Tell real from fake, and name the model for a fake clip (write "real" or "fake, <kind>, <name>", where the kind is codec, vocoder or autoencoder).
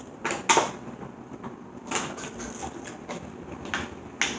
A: real